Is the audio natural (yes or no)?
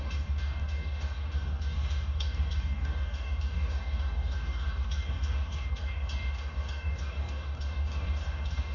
no